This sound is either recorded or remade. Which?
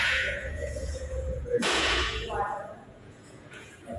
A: remade